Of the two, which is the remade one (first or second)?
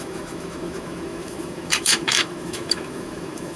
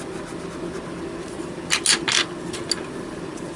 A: first